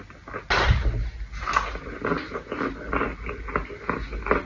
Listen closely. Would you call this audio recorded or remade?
recorded